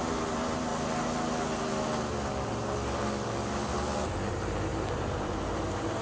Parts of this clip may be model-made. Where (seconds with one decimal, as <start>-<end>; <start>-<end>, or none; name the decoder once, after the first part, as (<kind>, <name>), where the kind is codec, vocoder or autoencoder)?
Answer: 0.0-0.7 (vocoder, BigVGAN v2); 4.3-6.0